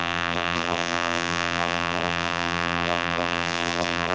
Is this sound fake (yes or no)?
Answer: yes